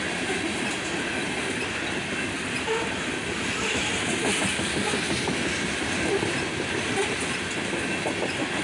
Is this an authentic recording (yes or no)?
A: yes